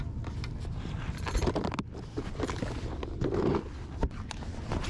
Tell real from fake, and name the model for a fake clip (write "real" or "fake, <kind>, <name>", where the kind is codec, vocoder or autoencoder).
real